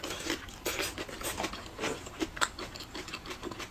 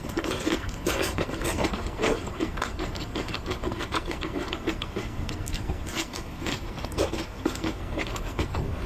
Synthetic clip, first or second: second